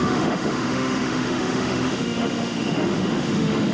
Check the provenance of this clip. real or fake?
fake